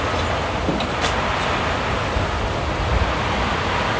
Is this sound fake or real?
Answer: real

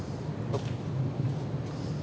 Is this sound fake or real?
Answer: real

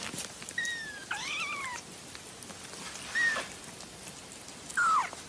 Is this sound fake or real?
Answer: real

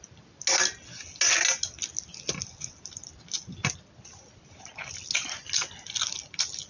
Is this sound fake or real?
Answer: real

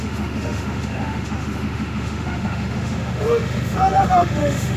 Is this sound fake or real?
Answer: fake